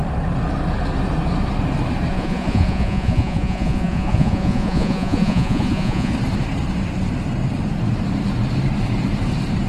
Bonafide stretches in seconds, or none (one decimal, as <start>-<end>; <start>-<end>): 0.0-2.1; 6.1-9.7